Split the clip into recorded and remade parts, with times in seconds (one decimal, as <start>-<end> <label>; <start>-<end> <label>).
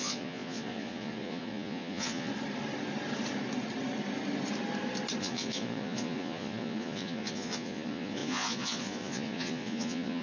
0.0-2.3 remade; 2.3-5.2 recorded; 5.2-10.2 remade